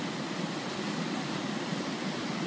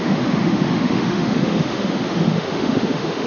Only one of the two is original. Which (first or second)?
first